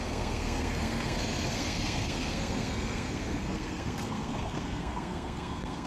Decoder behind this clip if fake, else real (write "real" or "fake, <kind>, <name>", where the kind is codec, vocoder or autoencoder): fake, codec, SNAC